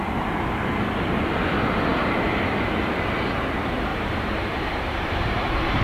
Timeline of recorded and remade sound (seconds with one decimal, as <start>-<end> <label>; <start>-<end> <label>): 0.0-3.9 recorded; 3.9-5.8 remade